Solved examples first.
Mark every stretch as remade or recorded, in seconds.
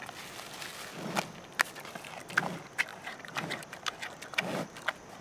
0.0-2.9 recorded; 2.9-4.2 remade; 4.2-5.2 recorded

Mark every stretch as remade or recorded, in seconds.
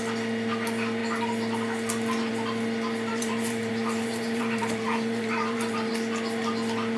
0.0-3.1 recorded; 3.1-5.9 remade; 5.9-7.0 recorded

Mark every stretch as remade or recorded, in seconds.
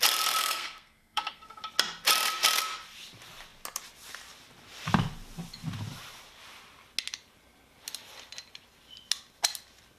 0.0-0.4 recorded; 0.4-1.6 remade; 1.6-10.0 recorded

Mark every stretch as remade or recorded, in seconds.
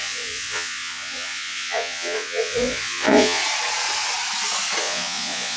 0.0-3.4 remade; 3.4-4.8 recorded; 4.8-5.6 remade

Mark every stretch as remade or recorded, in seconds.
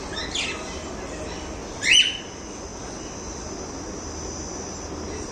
0.0-5.3 recorded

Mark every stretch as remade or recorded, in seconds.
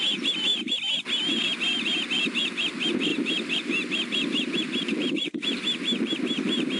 0.0-3.1 recorded; 3.1-5.1 remade; 5.1-6.8 recorded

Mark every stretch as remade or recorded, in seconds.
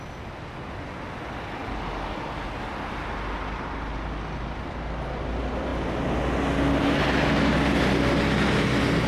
0.0-9.1 recorded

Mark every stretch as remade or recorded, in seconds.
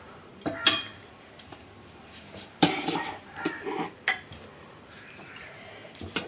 0.0-6.3 remade